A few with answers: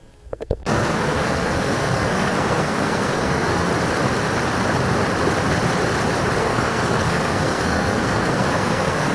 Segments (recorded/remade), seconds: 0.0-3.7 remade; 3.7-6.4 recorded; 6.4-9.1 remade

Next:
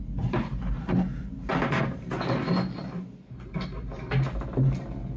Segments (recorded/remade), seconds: 0.0-5.2 recorded

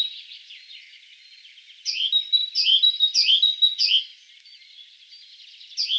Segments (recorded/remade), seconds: 0.0-6.0 recorded

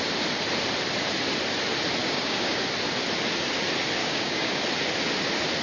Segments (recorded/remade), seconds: 0.0-2.0 recorded; 2.0-2.6 remade; 2.6-4.0 recorded; 4.0-4.6 remade; 4.6-5.6 recorded

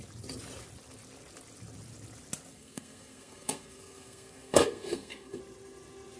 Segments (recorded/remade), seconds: 0.0-2.5 recorded; 2.5-5.4 remade; 5.4-6.2 recorded

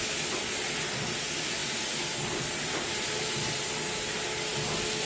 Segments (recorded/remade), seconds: 0.0-5.1 recorded

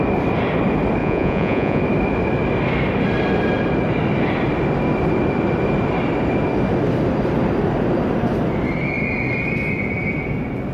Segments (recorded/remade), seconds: 0.0-1.0 recorded; 1.0-1.8 remade; 1.8-10.7 recorded

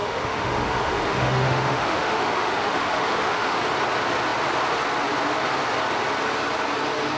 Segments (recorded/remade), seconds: 0.0-3.6 remade; 3.6-7.2 recorded